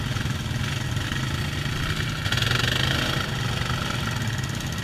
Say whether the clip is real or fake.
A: real